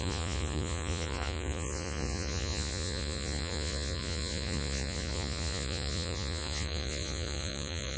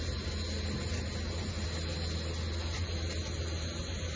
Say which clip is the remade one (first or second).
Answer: first